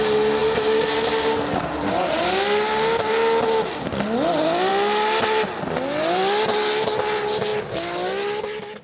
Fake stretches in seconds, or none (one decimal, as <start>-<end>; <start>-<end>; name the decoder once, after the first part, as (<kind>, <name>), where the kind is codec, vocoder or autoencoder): none